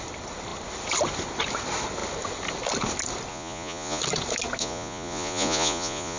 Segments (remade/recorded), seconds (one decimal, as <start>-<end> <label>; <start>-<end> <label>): 0.0-3.3 recorded; 3.3-4.0 remade; 4.0-4.6 recorded; 4.6-6.2 remade